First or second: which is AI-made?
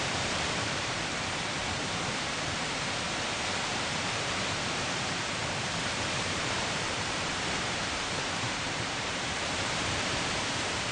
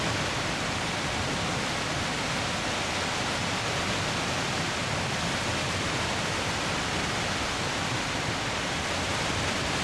first